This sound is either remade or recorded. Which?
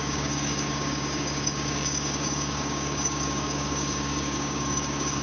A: remade